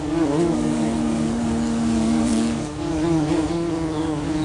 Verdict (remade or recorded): remade